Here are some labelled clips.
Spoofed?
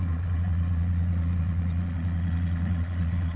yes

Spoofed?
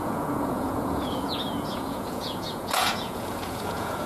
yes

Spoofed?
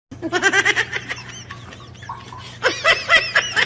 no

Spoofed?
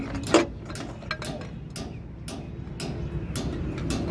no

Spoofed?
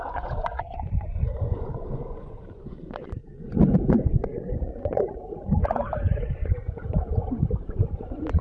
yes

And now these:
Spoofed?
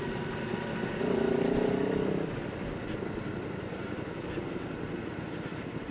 no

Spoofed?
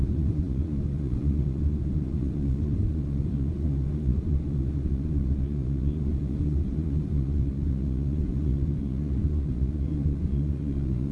yes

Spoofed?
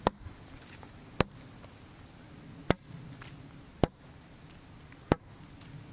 no